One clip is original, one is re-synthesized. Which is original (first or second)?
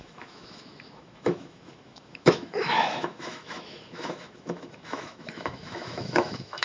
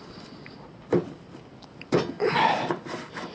second